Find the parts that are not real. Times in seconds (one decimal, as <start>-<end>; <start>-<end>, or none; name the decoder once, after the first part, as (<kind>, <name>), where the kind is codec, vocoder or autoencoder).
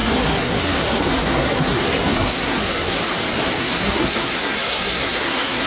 0.0-3.0 (codec, SNAC); 3.6-5.7